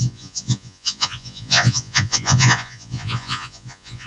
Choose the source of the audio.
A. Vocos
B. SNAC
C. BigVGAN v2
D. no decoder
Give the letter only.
A